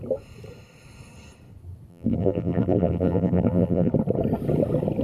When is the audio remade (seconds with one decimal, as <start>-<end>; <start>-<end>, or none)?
1.9-3.9